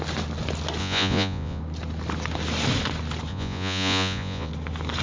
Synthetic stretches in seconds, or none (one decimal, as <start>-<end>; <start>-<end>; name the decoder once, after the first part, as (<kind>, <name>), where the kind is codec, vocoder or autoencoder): 0.8-1.6 (vocoder, Vocos); 3.3-4.5